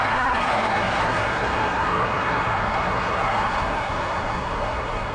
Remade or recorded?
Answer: remade